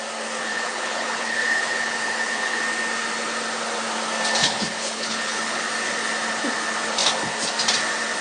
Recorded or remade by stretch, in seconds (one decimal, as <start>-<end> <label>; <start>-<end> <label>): 0.0-0.5 recorded; 0.5-2.6 remade; 2.6-4.4 recorded; 4.4-5.6 remade; 5.6-8.2 recorded